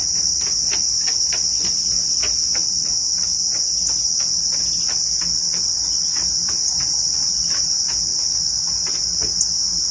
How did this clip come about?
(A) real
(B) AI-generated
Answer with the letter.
A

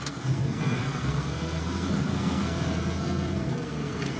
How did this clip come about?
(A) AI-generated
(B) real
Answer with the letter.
A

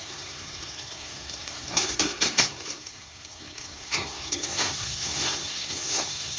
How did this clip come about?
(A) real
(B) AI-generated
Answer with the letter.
B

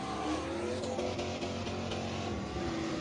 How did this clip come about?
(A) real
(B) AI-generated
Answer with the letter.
A